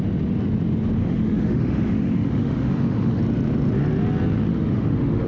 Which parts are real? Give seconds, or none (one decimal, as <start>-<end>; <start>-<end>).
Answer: 0.0-1.0; 3.2-4.5